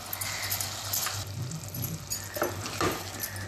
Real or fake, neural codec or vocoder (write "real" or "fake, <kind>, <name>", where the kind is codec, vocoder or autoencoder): real